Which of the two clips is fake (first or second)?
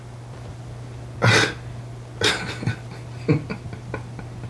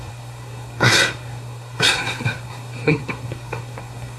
second